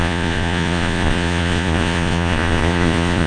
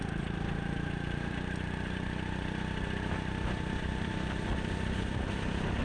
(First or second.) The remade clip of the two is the first